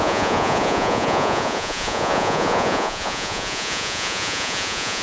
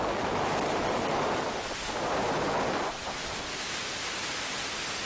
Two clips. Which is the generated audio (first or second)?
first